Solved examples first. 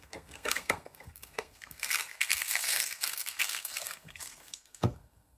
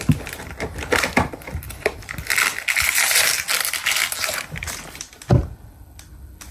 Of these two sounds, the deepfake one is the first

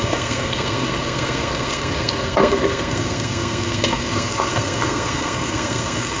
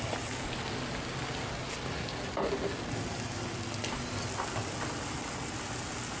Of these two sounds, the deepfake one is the first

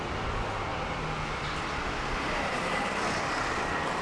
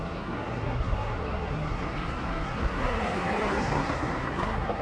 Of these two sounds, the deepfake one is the second